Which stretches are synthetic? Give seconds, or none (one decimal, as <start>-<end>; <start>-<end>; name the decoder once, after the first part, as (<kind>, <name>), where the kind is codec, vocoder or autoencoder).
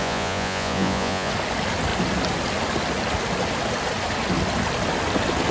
0.0-1.3 (vocoder, Vocos)